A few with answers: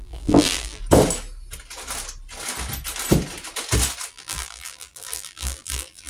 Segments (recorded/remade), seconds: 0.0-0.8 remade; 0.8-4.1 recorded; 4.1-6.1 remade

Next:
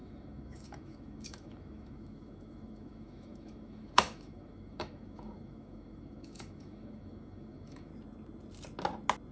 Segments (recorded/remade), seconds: 0.0-7.9 remade; 7.9-9.3 recorded

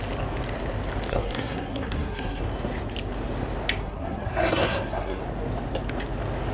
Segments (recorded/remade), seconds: 0.0-1.1 recorded; 1.1-2.4 remade; 2.4-3.8 recorded; 3.8-5.2 remade; 5.2-6.5 recorded